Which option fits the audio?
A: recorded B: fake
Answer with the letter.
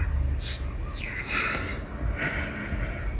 A